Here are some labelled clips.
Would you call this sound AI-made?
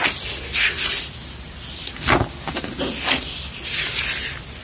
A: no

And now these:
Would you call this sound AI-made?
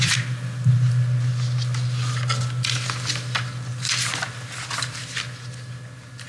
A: no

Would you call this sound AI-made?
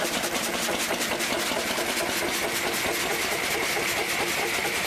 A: no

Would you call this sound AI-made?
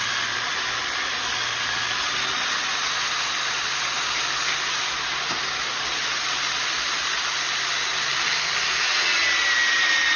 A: no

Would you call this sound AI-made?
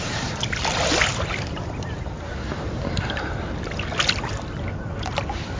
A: no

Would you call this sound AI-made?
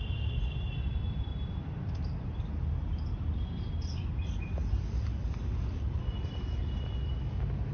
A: no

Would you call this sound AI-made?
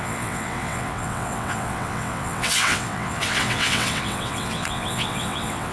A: yes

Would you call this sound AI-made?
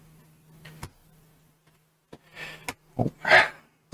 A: no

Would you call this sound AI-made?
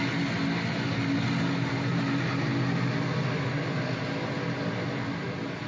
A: no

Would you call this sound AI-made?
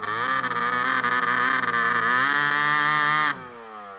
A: no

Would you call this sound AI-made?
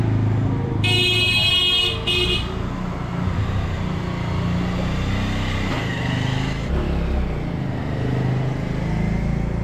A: no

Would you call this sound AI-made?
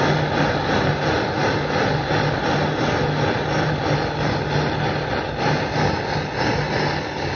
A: no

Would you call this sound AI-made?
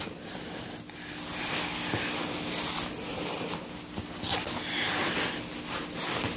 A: no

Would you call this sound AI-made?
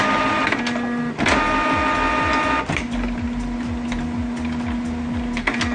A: no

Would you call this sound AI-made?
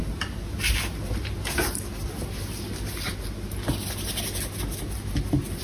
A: no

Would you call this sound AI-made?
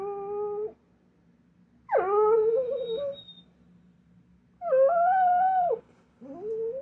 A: no